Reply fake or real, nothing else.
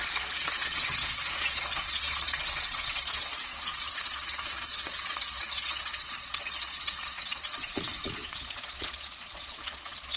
fake